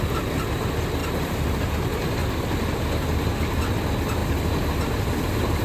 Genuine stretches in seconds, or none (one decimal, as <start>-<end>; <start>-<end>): 0.0-1.0; 1.6-5.6